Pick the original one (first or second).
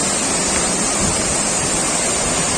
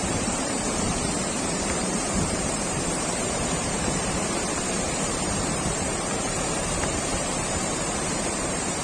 first